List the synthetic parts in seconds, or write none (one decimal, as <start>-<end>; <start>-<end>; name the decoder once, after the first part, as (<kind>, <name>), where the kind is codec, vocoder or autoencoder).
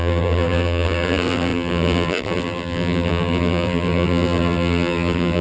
0.0-5.4 (vocoder, BigVGAN v2)